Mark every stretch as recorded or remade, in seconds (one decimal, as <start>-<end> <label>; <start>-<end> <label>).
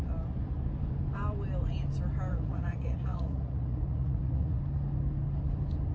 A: 0.0-2.3 recorded; 2.3-4.6 remade; 4.6-5.9 recorded